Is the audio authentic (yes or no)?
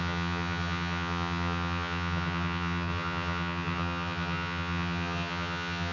no